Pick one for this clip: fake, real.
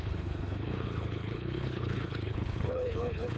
fake